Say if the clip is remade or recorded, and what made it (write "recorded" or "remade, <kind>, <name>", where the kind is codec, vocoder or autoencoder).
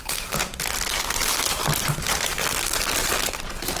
recorded